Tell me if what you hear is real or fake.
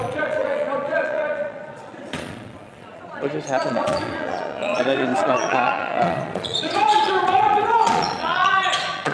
fake